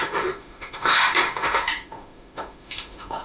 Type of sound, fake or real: fake